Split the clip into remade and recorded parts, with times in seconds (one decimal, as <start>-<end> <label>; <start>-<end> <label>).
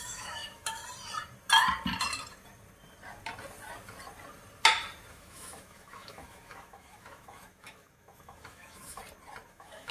0.0-0.8 remade; 0.8-5.1 recorded; 5.1-9.0 remade; 9.0-9.5 recorded; 9.5-9.9 remade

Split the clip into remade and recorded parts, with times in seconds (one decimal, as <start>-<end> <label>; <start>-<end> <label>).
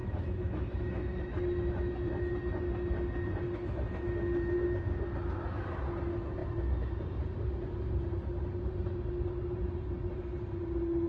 0.0-1.9 remade; 1.9-11.1 recorded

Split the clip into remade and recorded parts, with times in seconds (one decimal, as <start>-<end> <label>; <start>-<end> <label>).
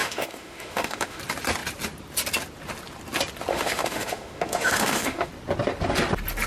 0.0-1.2 remade; 1.2-3.5 recorded; 3.5-5.3 remade; 5.3-6.5 recorded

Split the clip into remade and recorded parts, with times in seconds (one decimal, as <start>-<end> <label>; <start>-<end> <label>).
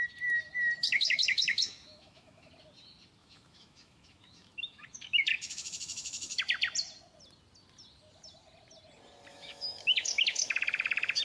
0.0-0.8 recorded; 0.8-2.5 remade; 2.5-3.2 recorded; 3.2-6.4 remade; 6.4-9.3 recorded; 9.3-11.2 remade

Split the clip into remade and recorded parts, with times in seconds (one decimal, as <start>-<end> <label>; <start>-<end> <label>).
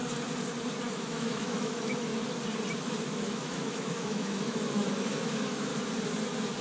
0.0-0.9 recorded; 0.9-2.1 remade; 2.1-2.8 recorded; 2.8-5.7 remade; 5.7-6.6 recorded